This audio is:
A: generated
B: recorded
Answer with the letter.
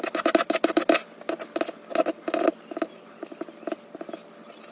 B